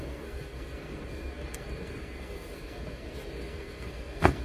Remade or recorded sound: remade